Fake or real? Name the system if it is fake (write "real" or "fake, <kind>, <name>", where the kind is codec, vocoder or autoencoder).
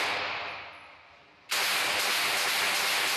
real